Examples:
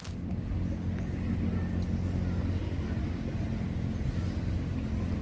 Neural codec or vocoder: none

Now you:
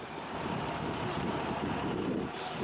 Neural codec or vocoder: vocoder, BigVGAN v2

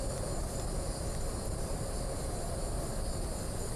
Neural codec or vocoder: vocoder, BigVGAN v2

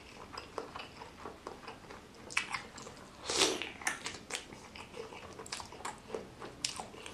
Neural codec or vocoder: none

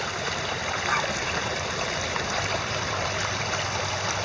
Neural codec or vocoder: vocoder, BigVGAN v2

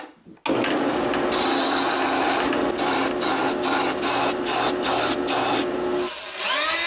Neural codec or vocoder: none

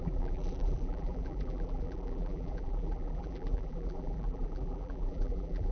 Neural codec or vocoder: vocoder, BigVGAN v2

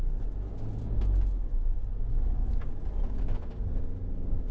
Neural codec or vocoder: none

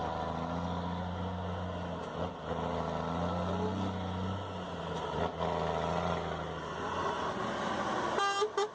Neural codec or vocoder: none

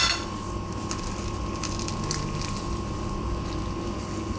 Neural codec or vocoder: none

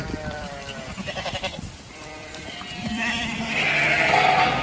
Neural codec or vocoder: vocoder, BigVGAN v2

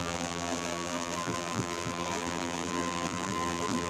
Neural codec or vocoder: vocoder, BigVGAN v2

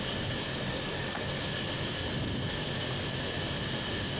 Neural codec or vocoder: none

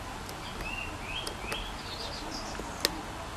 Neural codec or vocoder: none